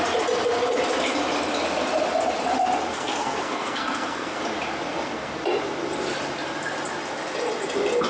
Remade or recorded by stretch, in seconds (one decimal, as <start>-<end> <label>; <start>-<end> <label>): 0.0-2.9 recorded; 2.9-4.4 remade; 4.4-4.9 recorded; 4.9-5.4 remade; 5.4-8.1 recorded